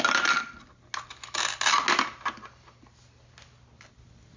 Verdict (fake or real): real